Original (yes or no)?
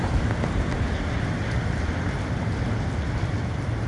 yes